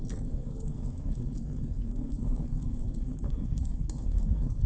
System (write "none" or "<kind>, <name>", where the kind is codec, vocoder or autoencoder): codec, SNAC